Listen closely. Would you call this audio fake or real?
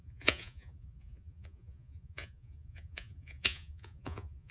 fake